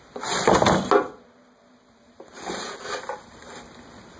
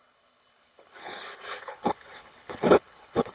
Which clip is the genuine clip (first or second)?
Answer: first